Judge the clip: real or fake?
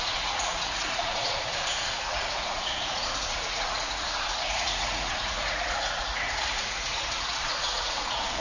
fake